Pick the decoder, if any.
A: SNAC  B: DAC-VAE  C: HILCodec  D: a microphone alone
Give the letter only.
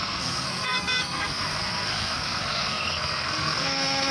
A